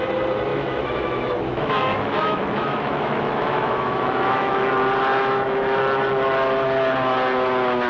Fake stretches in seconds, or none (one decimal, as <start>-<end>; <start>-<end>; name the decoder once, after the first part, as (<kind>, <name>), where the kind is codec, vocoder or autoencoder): 0.5-4.6 (autoencoder, DAC-VAE); 5.1-5.8